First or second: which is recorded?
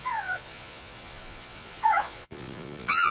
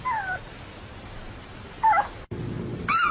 second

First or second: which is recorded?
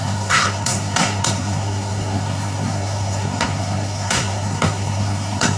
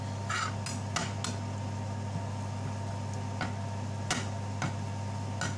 second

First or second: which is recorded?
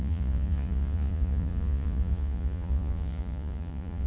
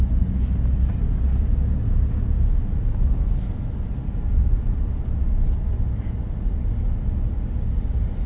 second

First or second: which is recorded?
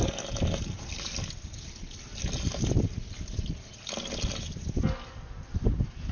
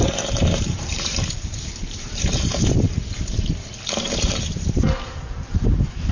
first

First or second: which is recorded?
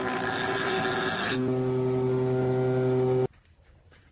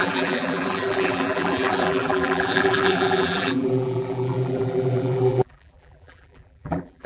first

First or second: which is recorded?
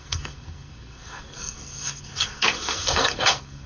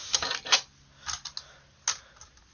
second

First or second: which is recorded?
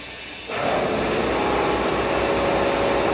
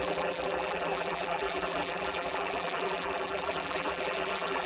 first